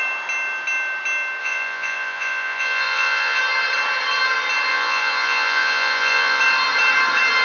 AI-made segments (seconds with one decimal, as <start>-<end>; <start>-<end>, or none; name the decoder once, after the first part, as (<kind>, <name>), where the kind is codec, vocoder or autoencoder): 1.4-3.4 (vocoder, Vocos); 4.7-6.4